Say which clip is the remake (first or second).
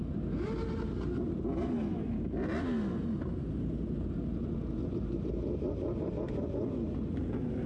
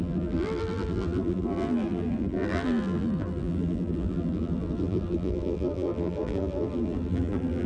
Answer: second